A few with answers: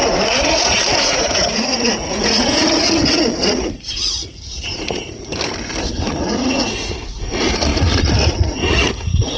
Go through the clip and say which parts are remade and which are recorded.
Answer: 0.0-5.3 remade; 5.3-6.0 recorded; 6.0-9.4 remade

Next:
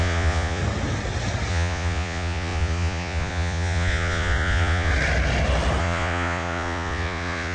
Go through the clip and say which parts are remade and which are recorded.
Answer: 0.0-0.6 remade; 0.6-1.5 recorded; 1.5-4.9 remade; 4.9-5.8 recorded; 5.8-7.5 remade

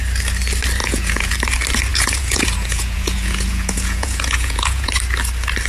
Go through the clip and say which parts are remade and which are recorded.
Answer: 0.0-0.8 recorded; 0.8-1.3 remade; 1.3-1.9 recorded; 1.9-4.9 remade; 4.9-5.7 recorded

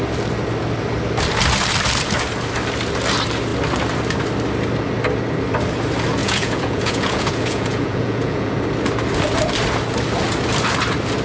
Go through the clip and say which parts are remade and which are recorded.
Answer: 0.0-6.2 recorded; 6.2-8.5 remade; 8.5-11.2 recorded